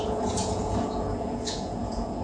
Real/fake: fake